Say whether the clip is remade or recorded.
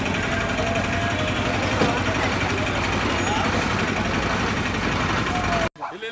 recorded